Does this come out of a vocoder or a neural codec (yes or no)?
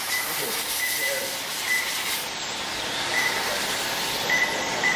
no